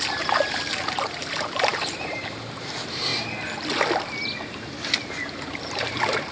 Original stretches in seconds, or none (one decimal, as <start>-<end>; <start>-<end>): 3.1-4.5